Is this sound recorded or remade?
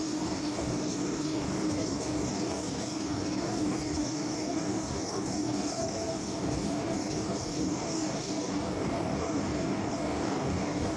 remade